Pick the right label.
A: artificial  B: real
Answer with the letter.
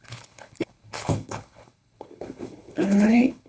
A